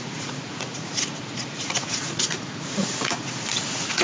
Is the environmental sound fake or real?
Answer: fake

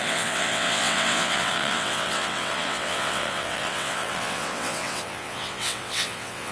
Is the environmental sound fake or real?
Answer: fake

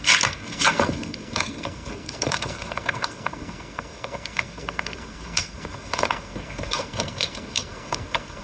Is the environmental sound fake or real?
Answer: fake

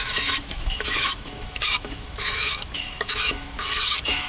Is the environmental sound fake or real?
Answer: fake